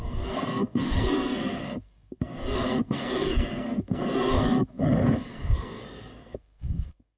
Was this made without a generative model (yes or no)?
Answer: no